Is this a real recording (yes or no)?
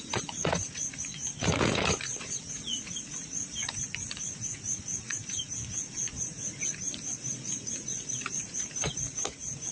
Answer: no